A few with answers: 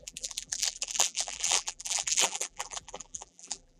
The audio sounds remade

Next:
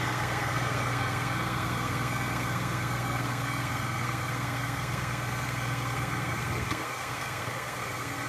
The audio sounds remade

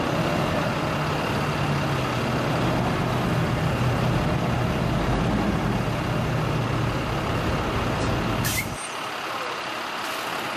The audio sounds recorded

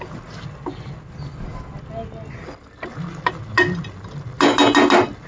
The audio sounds recorded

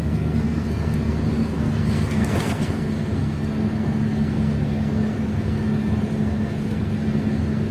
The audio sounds remade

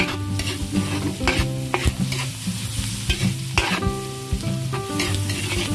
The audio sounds recorded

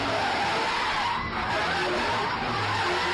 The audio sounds recorded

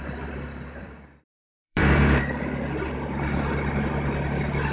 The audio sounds remade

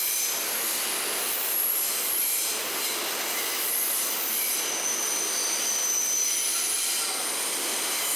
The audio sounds recorded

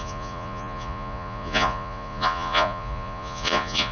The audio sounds remade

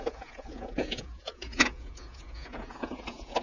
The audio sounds remade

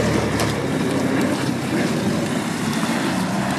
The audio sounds recorded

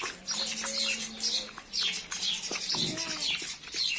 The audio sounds recorded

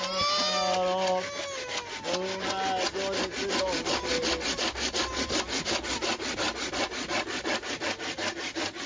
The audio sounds recorded